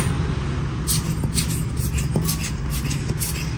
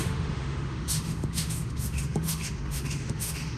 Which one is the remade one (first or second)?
second